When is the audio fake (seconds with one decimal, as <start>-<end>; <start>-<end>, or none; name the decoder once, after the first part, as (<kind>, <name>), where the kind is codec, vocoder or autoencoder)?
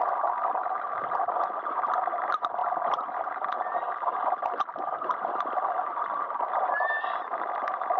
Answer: none